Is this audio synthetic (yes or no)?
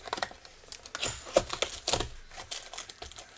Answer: no